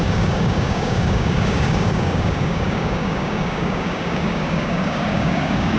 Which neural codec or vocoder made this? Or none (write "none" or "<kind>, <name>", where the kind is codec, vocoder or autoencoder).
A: codec, DAC